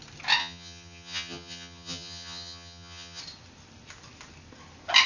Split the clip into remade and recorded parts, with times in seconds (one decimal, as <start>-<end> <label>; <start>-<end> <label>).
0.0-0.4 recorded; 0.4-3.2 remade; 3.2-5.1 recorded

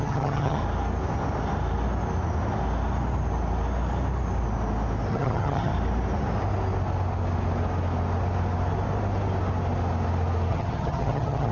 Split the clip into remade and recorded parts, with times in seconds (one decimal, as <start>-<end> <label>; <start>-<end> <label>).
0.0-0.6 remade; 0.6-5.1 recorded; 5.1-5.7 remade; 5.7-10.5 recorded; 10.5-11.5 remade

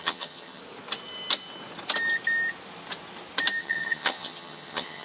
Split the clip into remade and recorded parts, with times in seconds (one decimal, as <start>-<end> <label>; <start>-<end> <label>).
0.0-0.6 remade; 0.6-3.6 recorded; 3.6-5.0 remade